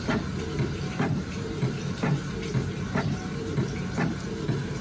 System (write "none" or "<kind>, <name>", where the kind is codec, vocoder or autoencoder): none